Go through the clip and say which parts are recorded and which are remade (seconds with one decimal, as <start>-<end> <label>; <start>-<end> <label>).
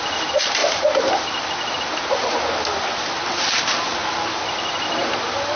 0.0-5.6 recorded